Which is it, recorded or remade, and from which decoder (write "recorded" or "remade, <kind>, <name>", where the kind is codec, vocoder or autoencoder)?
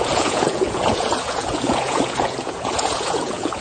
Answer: remade, vocoder, Vocos